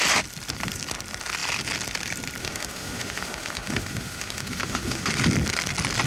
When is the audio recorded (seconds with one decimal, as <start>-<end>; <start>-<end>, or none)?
0.0-2.4; 5.1-6.1